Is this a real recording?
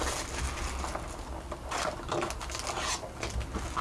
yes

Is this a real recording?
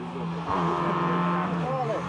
yes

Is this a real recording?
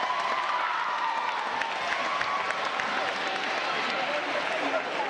yes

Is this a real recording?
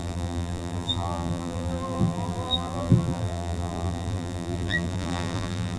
no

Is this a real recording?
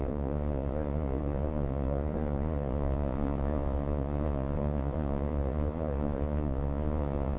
no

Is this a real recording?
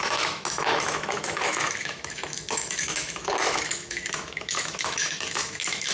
no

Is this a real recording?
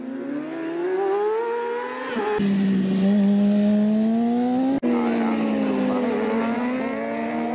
yes